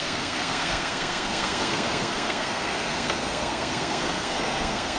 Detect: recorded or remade remade